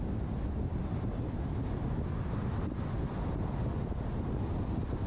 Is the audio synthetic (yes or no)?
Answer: no